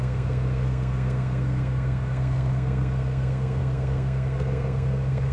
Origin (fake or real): fake